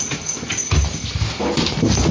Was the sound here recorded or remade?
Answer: recorded